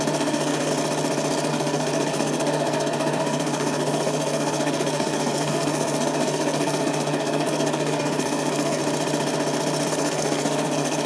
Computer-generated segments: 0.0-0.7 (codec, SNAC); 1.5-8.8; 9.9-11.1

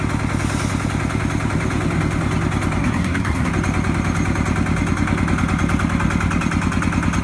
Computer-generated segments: 2.8-3.5 (codec, SNAC)

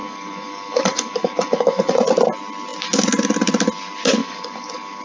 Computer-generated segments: 0.0-1.9 (codec, DAC); 4.2-5.0

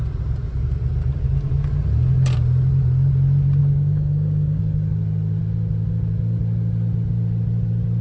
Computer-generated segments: 3.6-4.6 (codec, DAC)

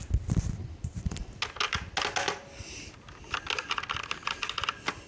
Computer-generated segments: none